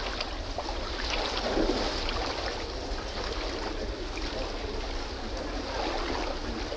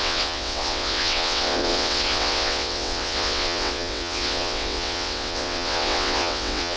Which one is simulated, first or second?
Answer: second